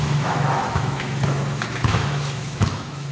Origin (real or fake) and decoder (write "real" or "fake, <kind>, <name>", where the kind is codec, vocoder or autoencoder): fake, autoencoder, DAC-VAE